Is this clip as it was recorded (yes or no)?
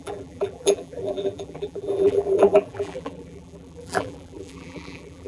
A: no